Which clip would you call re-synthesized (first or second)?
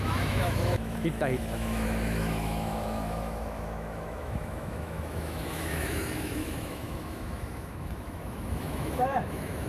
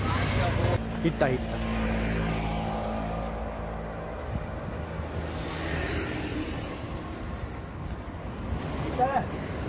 first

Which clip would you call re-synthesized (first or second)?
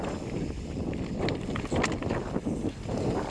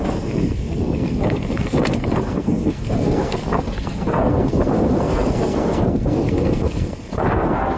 second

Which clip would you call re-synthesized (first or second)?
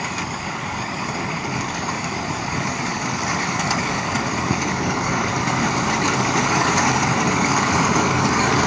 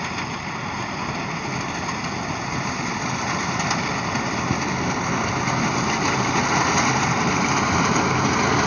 first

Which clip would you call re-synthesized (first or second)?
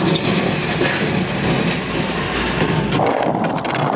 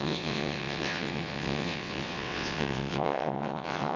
second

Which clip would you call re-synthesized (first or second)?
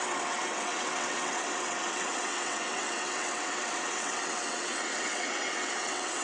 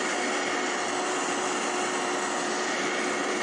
first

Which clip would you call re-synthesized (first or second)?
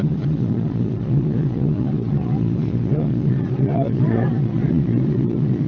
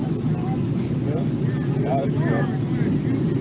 first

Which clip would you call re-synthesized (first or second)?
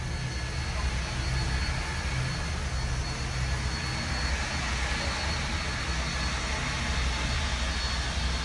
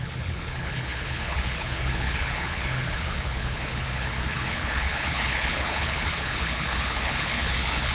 second